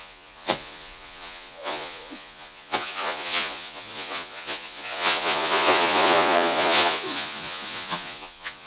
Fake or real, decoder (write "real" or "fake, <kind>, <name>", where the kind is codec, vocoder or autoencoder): fake, vocoder, Vocos